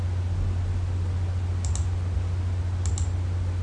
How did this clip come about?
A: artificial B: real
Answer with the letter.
B